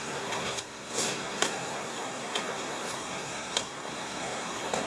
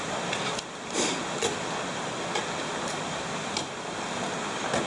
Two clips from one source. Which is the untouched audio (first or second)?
second